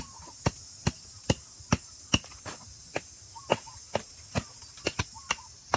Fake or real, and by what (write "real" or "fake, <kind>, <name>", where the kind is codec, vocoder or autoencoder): real